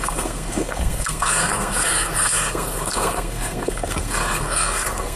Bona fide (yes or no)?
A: no